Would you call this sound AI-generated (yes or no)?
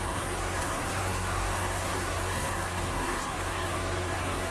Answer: yes